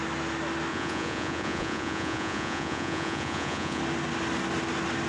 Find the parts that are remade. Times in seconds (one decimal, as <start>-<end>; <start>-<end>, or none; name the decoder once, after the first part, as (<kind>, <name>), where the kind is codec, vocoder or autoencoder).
0.7-3.8 (vocoder, Vocos)